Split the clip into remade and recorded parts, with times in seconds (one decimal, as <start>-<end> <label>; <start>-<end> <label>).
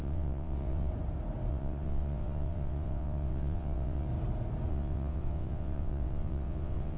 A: 0.0-0.9 remade; 0.9-1.5 recorded; 1.5-4.1 remade; 4.1-4.7 recorded; 4.7-7.0 remade